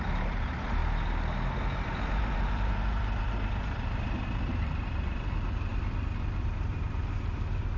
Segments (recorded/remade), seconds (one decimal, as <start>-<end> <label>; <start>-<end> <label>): 0.0-0.8 remade; 0.8-1.9 recorded; 1.9-5.7 remade; 5.7-6.3 recorded; 6.3-7.8 remade